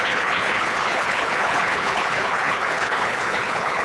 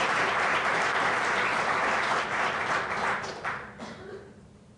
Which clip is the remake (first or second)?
first